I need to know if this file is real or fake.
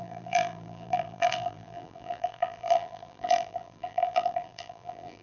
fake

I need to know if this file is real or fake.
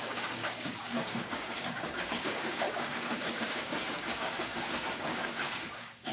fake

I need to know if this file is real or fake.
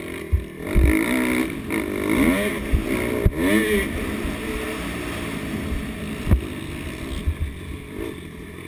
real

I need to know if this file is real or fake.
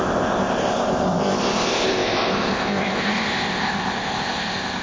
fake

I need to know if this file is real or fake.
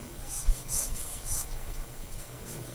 fake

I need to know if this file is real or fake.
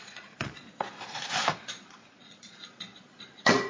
fake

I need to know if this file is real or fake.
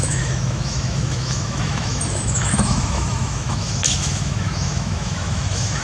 fake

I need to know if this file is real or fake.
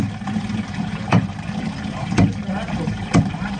fake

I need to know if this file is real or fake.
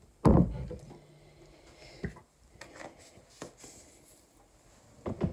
real